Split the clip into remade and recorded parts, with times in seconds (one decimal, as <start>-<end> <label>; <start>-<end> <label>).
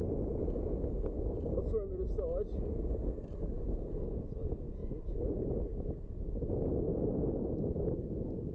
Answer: 0.0-8.5 recorded